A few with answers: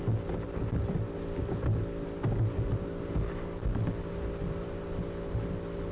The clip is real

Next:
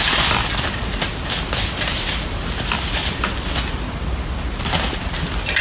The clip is real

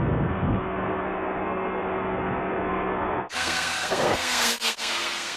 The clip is fake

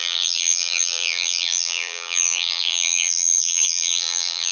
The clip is fake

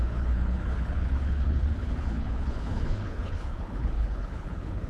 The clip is fake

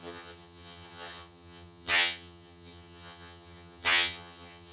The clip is fake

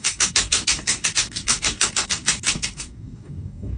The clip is fake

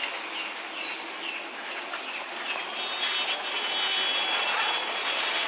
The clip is real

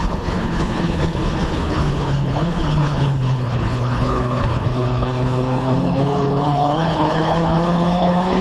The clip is fake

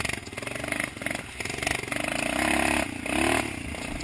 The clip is real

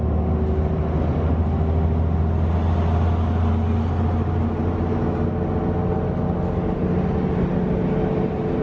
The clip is real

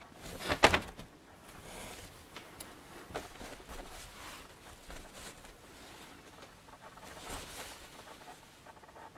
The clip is real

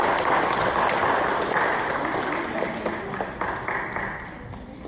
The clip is real